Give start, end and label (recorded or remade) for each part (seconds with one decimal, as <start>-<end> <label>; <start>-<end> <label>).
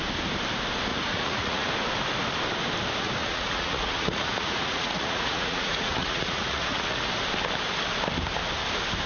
0.0-0.9 recorded; 0.9-1.7 remade; 1.7-3.2 recorded; 3.2-7.1 remade; 7.1-9.1 recorded